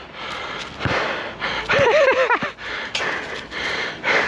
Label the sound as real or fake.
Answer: real